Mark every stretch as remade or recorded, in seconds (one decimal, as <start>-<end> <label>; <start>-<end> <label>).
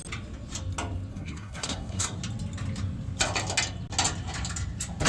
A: 0.0-1.1 recorded; 1.1-2.2 remade; 2.2-5.1 recorded